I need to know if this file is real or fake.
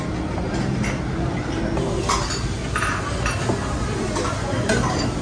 real